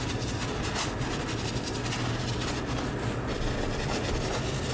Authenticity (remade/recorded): recorded